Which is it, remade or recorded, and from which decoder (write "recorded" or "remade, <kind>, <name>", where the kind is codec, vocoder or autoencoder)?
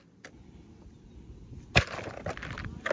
recorded